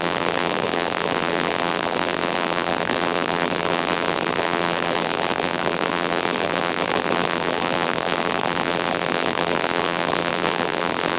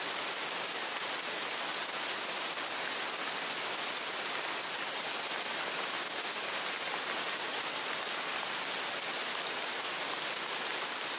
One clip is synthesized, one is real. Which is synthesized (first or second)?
first